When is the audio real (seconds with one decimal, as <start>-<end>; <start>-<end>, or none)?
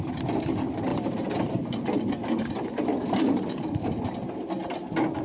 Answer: 0.0-0.9; 4.0-5.2